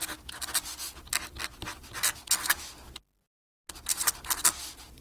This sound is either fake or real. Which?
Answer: real